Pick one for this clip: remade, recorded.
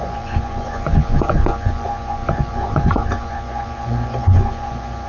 remade